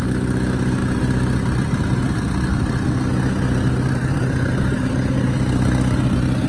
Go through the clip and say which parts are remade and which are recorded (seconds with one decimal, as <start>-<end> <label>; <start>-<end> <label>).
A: 0.0-6.5 recorded